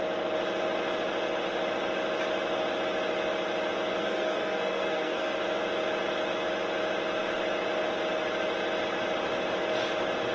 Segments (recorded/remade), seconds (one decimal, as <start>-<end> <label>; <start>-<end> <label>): 0.0-4.0 recorded; 4.0-5.4 remade; 5.4-10.3 recorded